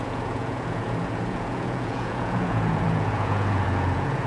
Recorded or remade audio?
remade